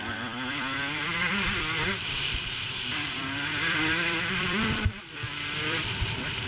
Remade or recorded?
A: remade